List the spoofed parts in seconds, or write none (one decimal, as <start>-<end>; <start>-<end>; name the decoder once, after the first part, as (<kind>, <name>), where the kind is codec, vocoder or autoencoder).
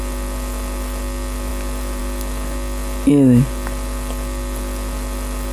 none